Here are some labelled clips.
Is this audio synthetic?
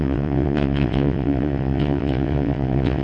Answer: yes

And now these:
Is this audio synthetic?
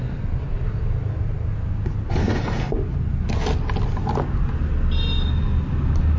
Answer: no